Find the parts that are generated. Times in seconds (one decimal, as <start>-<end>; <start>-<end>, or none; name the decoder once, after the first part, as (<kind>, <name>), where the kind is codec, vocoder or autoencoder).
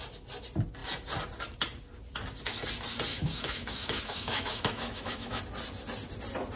3.1-5.4 (autoencoder, DAC-VAE)